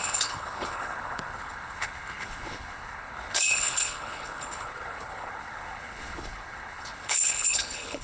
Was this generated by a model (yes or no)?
yes